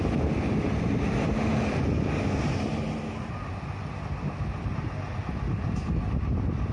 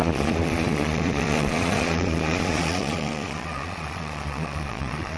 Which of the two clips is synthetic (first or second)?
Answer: second